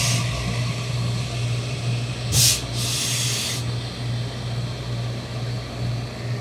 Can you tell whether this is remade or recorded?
recorded